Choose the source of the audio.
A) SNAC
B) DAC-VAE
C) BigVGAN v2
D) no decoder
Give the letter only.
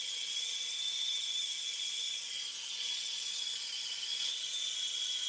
D